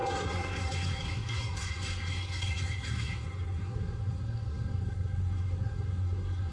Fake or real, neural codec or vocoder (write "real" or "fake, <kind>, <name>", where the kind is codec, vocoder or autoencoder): fake, codec, SNAC